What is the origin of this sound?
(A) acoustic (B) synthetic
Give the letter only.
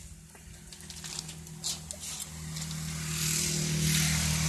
A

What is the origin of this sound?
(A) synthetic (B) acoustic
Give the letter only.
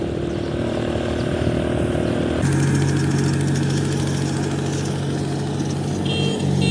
B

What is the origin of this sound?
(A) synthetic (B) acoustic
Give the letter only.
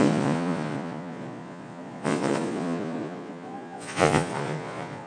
A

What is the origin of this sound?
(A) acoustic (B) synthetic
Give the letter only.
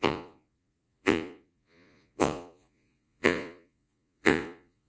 B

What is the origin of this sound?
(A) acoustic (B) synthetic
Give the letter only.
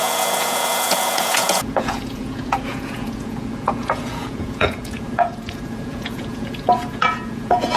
B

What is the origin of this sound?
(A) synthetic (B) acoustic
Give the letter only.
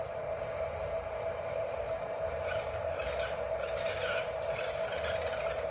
A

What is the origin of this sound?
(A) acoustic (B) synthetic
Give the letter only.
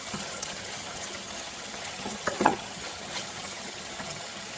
B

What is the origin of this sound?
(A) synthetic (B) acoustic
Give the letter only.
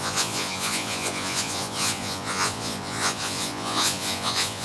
A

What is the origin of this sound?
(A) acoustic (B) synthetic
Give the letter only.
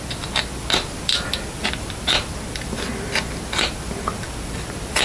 A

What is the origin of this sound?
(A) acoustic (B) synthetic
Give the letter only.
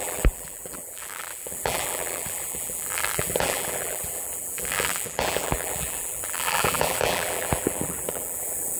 B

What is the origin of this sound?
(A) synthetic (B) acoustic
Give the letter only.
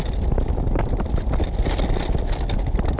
B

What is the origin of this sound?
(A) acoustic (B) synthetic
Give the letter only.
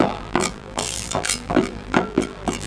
B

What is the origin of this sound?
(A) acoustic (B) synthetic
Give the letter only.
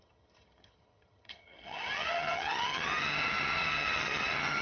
B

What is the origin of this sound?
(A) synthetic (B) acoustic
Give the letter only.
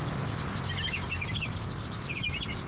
B